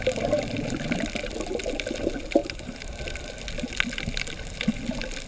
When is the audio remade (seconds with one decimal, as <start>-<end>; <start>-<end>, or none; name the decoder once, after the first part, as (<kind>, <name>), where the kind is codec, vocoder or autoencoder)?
2.4-3.0 (vocoder, BigVGAN v2)